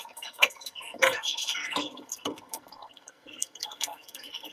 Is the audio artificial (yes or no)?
yes